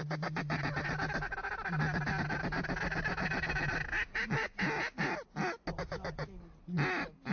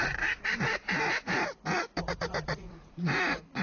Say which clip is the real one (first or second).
first